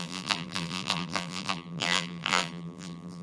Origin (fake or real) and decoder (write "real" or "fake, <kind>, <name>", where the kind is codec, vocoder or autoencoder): fake, vocoder, BigVGAN v2